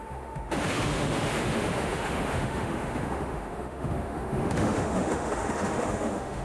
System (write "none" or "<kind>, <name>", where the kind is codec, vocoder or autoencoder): autoencoder, DAC-VAE